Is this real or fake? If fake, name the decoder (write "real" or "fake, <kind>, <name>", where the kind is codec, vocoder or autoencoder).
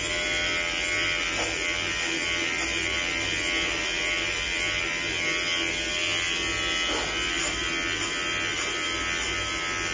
real